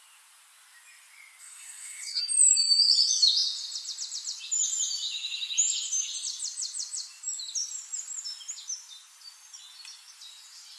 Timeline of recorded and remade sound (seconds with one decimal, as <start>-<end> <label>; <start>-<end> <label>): 0.0-1.4 recorded; 1.4-2.2 remade; 2.2-10.8 recorded